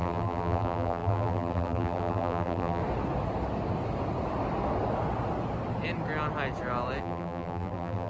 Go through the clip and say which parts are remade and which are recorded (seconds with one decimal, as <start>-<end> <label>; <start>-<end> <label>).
0.0-2.8 remade; 2.8-7.0 recorded; 7.0-8.1 remade